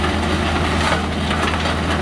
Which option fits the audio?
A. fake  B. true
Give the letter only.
B